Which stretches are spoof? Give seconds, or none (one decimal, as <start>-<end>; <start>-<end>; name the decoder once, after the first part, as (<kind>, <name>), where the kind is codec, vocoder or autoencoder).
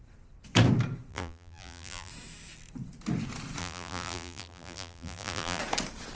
1.1-2.1 (vocoder, BigVGAN v2); 3.6-5.6